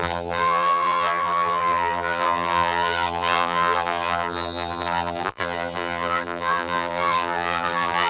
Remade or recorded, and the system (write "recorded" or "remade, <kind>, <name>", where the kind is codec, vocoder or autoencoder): remade, vocoder, BigVGAN v2